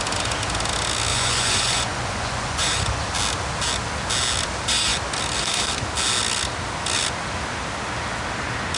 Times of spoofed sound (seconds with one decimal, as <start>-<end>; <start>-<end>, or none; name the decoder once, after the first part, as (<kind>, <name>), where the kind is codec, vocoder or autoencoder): 1.1-3.0 (vocoder, Vocos)